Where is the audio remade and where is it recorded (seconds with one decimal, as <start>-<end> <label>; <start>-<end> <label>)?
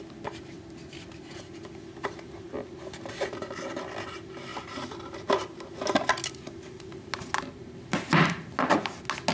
0.0-9.3 recorded